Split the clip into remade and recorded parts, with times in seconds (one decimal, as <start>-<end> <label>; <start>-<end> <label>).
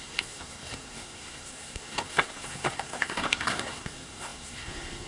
0.0-5.1 remade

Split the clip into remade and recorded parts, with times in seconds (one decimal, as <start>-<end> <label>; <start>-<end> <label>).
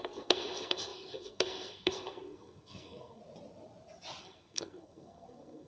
0.0-3.2 remade; 3.2-4.2 recorded; 4.2-5.7 remade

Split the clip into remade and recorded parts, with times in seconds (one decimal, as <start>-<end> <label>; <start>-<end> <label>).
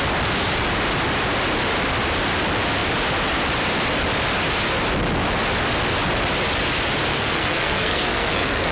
0.0-7.1 recorded; 7.1-8.7 remade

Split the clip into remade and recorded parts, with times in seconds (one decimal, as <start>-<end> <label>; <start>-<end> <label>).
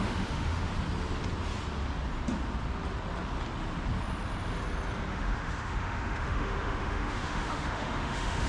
0.0-0.7 remade; 0.7-5.1 recorded; 5.1-8.5 remade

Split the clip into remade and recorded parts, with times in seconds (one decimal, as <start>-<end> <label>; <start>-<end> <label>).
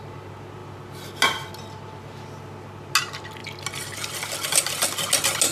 0.0-5.5 recorded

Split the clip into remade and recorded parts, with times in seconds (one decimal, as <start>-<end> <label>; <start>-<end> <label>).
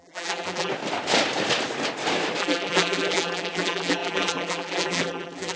0.0-0.7 remade; 0.7-2.4 recorded; 2.4-5.6 remade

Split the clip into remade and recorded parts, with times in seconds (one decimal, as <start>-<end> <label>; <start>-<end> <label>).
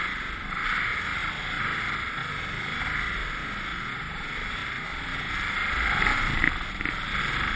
0.0-7.6 recorded